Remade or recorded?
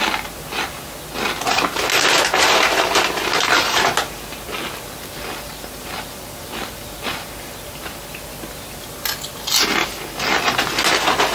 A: recorded